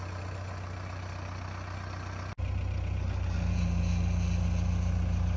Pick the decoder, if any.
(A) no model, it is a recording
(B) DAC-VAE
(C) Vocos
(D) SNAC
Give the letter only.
A